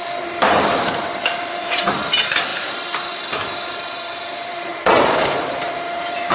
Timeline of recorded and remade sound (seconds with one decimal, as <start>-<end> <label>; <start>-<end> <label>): 0.0-6.3 remade